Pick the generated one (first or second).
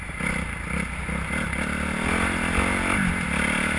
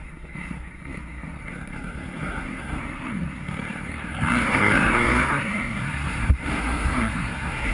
second